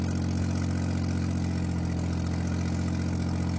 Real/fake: real